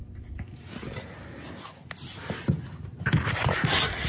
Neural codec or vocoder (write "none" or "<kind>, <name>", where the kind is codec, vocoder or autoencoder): none